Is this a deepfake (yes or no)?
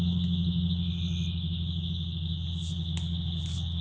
no